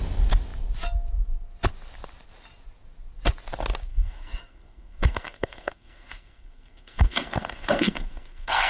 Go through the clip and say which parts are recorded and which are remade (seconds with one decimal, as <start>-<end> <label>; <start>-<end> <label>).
0.0-3.9 recorded; 3.9-8.7 remade